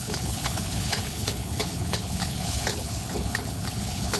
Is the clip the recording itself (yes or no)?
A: no